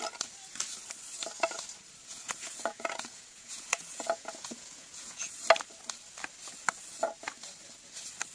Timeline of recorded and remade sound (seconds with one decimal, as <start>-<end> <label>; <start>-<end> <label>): 0.0-2.0 recorded; 2.0-5.3 remade; 5.3-8.3 recorded